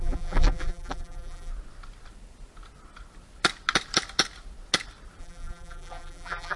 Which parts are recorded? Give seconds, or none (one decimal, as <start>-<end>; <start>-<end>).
1.5-5.2